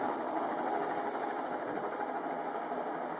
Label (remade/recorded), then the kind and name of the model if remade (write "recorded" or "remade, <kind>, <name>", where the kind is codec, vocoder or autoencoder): recorded